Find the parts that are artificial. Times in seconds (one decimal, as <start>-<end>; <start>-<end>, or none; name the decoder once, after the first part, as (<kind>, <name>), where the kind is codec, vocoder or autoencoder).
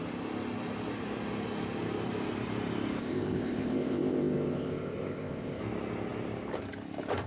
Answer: 3.0-5.6 (codec, ZipCodec)